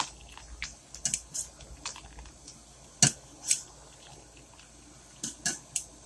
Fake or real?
real